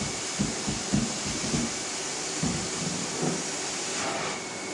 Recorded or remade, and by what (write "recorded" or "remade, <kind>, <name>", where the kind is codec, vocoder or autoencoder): recorded